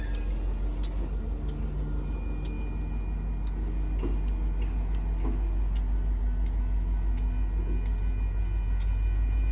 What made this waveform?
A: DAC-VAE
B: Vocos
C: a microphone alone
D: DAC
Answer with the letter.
C